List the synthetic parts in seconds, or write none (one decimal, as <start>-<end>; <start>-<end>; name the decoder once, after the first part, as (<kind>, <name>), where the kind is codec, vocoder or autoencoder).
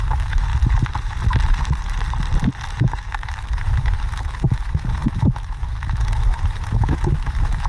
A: 0.0-0.5 (autoencoder, DAC-VAE); 2.8-7.7